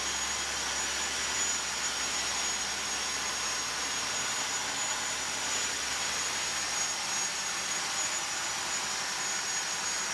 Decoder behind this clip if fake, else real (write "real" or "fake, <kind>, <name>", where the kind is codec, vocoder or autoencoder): real